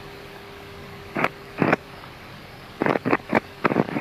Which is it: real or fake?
fake